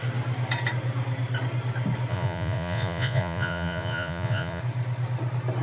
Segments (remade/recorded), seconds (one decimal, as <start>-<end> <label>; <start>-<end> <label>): 0.0-2.1 recorded; 2.1-4.6 remade; 4.6-5.6 recorded